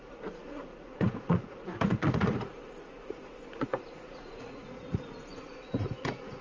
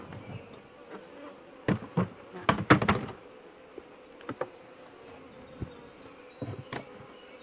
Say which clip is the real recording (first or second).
second